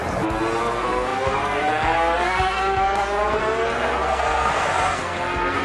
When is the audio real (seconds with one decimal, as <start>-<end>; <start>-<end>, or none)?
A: 0.0-0.6